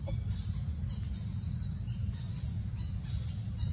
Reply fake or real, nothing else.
real